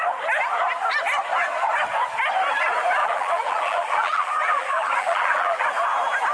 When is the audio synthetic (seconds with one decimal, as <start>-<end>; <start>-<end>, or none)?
3.0-5.7